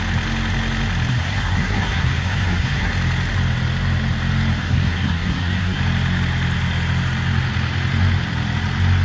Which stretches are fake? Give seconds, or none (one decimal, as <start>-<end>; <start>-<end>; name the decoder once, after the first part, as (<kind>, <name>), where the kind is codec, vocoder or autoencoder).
1.1-2.9 (codec, SNAC); 4.6-5.8